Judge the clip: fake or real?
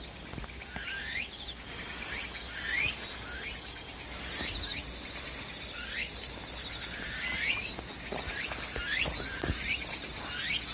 real